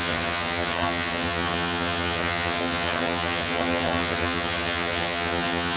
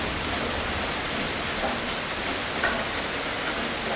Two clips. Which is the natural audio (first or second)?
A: second